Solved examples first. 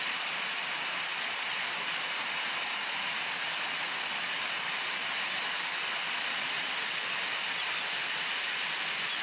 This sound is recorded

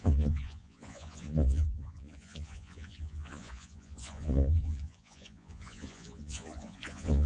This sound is remade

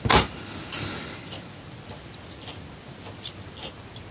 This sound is recorded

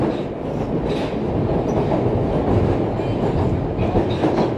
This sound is recorded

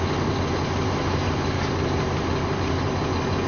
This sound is recorded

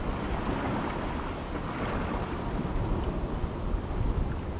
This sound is recorded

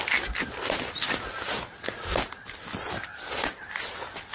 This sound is recorded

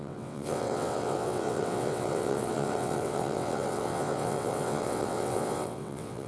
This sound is remade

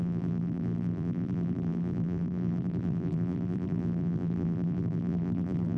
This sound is remade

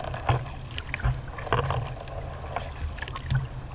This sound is recorded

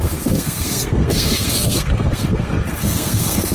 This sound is remade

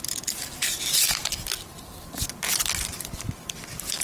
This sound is recorded